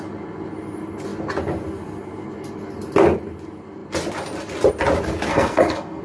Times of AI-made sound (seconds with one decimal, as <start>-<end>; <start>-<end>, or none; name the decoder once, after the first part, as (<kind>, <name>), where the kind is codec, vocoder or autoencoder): 5.3-6.0 (codec, SNAC)